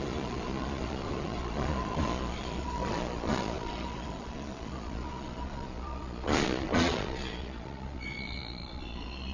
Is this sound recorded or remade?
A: remade